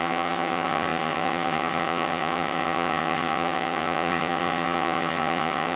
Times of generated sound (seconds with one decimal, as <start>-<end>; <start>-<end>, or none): 0.0-5.8